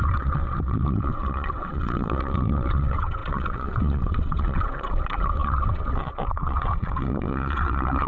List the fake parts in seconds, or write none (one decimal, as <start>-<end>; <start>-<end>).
0.0-8.1